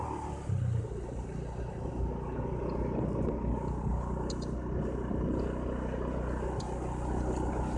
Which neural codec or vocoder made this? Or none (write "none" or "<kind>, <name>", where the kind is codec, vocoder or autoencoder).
none